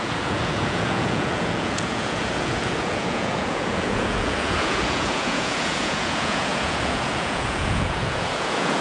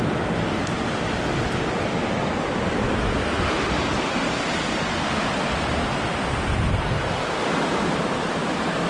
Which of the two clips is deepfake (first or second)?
first